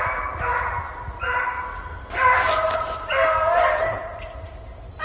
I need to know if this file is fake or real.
real